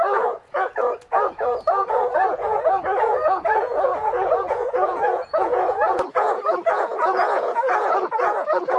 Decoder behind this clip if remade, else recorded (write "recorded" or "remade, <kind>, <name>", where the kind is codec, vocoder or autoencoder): remade, vocoder, Vocos